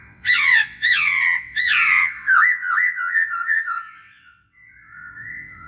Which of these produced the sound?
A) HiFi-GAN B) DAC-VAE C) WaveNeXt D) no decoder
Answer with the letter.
C